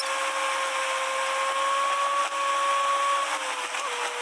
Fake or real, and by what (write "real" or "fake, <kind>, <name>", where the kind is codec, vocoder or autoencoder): real